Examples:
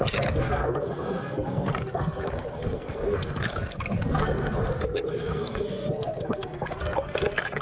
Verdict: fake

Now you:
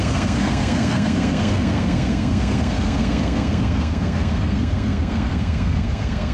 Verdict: fake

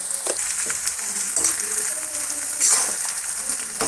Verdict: real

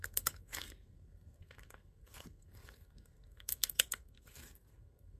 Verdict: fake